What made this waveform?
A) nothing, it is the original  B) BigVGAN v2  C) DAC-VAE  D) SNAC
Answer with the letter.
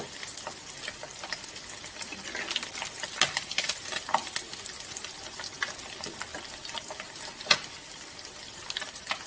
A